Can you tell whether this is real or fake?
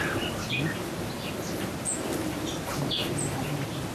real